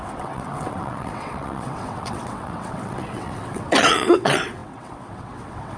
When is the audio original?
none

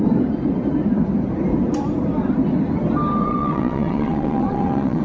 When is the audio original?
0.0-3.2

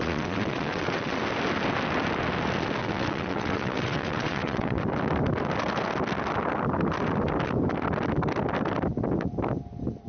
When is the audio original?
1.2-2.8; 4.8-10.1

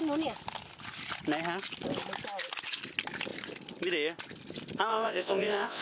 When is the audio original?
0.0-4.9

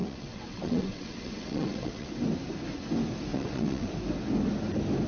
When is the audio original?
2.1-3.3; 3.9-5.1

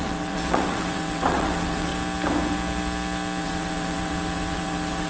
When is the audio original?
1.9-3.4

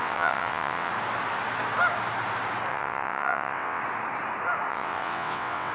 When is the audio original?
0.9-2.7; 3.8-4.7

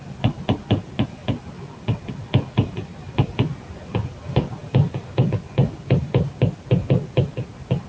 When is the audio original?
0.0-7.9